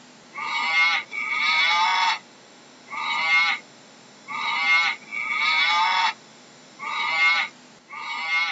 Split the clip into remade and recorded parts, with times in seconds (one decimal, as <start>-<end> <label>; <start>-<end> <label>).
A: 0.0-8.5 recorded